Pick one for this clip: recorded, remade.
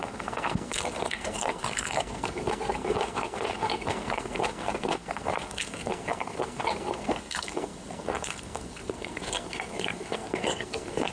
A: remade